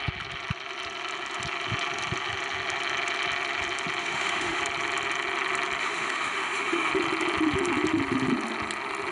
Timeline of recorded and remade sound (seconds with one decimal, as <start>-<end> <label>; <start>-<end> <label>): 0.0-4.0 recorded; 4.0-4.6 remade; 4.6-5.8 recorded; 5.8-6.9 remade; 6.9-9.1 recorded